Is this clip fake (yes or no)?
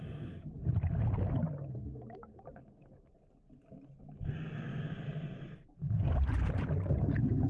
no